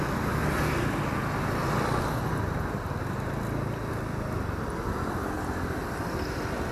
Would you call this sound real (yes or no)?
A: yes